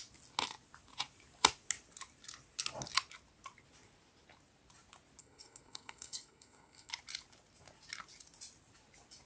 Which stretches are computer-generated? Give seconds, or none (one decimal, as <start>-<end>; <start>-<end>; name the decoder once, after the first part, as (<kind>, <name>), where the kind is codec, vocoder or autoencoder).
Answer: 5.2-6.9 (codec, SNAC)